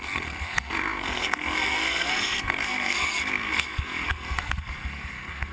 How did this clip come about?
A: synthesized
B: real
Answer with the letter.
A